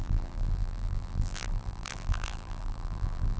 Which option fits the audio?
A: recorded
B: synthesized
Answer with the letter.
B